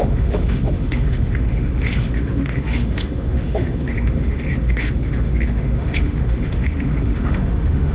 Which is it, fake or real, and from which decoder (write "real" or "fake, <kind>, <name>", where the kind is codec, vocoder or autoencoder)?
fake, autoencoder, DAC-VAE